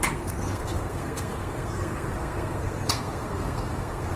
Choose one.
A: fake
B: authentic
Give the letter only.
A